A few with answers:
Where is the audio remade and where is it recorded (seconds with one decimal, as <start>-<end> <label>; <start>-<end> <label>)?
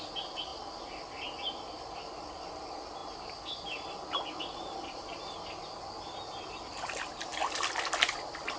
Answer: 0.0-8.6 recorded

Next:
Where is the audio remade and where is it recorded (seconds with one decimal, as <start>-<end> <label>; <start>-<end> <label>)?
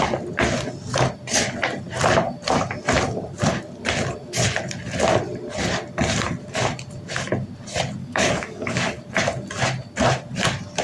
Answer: 0.0-8.0 recorded; 8.0-9.0 remade; 9.0-10.8 recorded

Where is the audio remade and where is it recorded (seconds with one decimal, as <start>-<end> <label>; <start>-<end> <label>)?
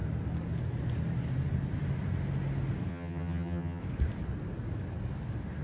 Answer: 0.0-2.9 recorded; 2.9-3.8 remade; 3.8-5.6 recorded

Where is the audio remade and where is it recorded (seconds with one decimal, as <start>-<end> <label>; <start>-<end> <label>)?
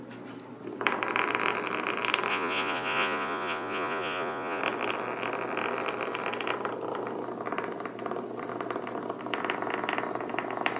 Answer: 0.0-2.3 recorded; 2.3-4.6 remade; 4.6-10.8 recorded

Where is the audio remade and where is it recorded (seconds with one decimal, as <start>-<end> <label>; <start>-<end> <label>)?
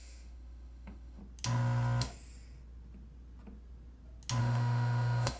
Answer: 0.0-1.2 remade; 1.2-4.4 recorded; 4.4-5.4 remade